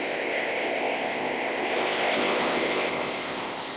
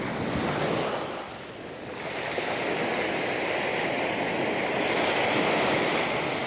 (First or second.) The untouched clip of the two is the second